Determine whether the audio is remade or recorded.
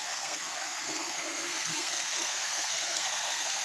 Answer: remade